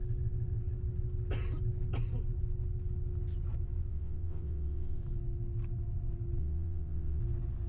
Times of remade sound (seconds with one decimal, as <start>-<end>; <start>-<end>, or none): 3.9-5.0; 6.4-7.2